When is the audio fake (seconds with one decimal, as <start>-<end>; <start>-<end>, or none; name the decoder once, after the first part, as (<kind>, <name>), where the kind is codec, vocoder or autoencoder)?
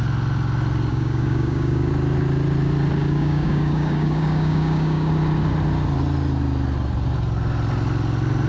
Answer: 0.9-1.9 (codec, DAC); 3.0-5.1